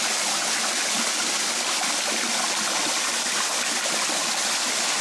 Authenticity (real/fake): real